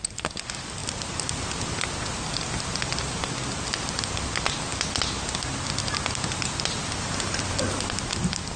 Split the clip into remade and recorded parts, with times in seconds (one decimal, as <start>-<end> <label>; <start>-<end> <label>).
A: 0.0-8.6 recorded